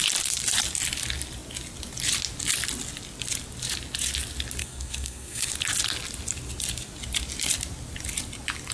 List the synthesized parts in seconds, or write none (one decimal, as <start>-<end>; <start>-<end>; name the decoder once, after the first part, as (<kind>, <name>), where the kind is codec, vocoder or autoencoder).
4.6-5.5 (codec, SNAC)